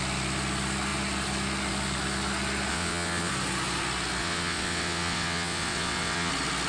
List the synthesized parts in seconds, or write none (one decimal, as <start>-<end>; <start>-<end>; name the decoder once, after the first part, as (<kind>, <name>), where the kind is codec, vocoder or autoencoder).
2.7-3.3 (vocoder, WaveNeXt); 4.2-6.3